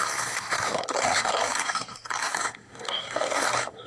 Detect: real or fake fake